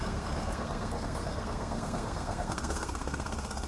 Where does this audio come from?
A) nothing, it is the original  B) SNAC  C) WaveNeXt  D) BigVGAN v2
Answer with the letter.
B